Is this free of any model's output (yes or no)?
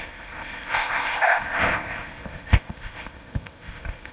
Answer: no